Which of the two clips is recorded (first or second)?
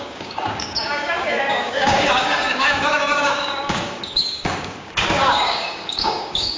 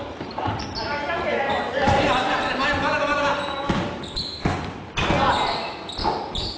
second